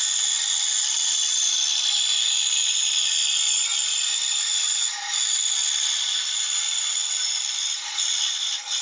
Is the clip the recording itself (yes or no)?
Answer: yes